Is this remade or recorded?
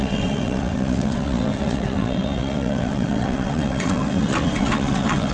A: remade